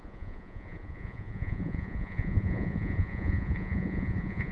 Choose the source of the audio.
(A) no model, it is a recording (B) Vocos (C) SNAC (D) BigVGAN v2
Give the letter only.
B